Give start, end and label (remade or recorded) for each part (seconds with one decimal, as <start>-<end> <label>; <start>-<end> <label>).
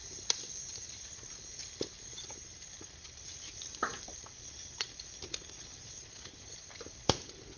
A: 0.0-7.6 recorded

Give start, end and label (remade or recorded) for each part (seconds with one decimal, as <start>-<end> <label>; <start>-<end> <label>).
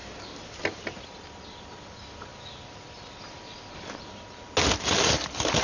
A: 0.0-5.6 recorded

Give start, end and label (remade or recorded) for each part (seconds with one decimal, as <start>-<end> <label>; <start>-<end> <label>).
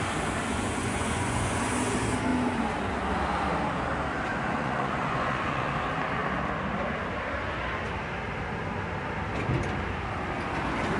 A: 0.0-0.5 recorded; 0.5-1.6 remade; 1.6-4.3 recorded; 4.3-5.7 remade; 5.7-11.0 recorded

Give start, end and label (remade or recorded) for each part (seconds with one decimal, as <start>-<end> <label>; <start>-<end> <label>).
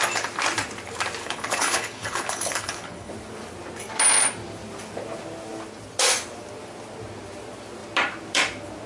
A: 0.0-1.2 recorded; 1.2-3.1 remade; 3.1-8.9 recorded